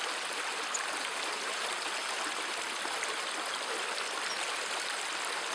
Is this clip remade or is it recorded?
recorded